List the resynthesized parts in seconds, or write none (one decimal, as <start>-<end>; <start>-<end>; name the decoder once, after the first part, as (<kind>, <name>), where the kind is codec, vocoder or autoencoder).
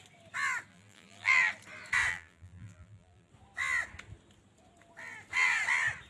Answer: 0.7-1.5 (vocoder, BigVGAN v2); 2.1-3.3